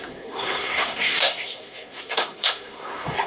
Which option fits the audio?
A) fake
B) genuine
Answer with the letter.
A